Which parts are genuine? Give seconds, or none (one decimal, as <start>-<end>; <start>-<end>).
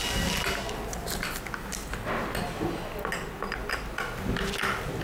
0.0-5.0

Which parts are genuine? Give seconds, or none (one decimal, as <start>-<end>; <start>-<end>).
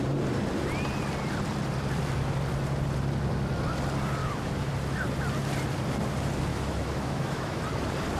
0.0-4.2; 4.7-6.5; 7.6-8.2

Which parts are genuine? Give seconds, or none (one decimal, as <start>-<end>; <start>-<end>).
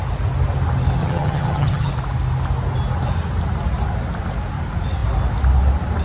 0.0-1.0; 1.9-6.0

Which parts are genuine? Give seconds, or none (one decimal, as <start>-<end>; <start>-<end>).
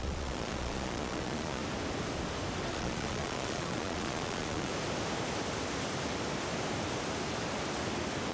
1.6-2.7; 4.7-8.3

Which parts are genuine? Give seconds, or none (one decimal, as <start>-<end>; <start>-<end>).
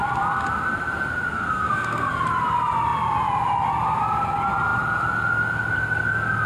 0.0-1.3; 2.1-6.5